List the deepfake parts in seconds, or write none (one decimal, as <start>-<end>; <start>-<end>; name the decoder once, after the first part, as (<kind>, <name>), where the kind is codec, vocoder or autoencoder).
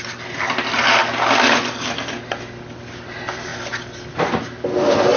none